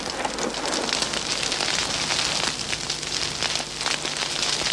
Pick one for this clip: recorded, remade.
recorded